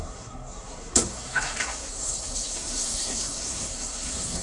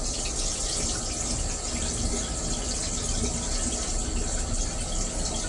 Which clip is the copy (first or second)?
first